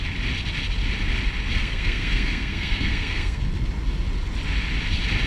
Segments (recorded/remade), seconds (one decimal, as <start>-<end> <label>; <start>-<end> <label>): 0.0-1.6 recorded; 1.6-3.4 remade; 3.4-5.3 recorded